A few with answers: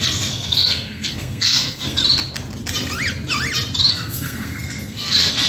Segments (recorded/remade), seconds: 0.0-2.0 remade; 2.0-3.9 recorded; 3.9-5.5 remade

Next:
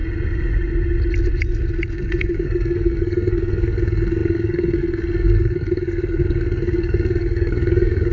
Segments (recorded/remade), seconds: 0.0-1.9 recorded; 1.9-8.1 remade